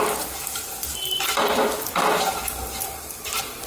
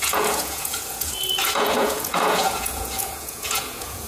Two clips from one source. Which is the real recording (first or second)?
first